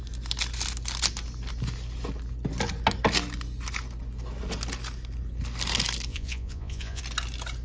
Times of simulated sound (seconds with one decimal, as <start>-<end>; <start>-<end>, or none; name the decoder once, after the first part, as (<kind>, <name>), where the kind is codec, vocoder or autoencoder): 6.1-7.0 (vocoder, Vocos)